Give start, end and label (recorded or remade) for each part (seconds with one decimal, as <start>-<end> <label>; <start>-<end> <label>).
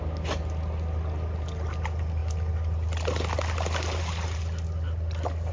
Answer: 0.0-5.5 recorded